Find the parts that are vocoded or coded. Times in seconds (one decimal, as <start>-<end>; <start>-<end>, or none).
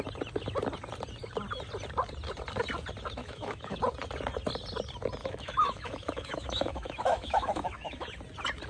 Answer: 3.2-3.8; 5.2-8.2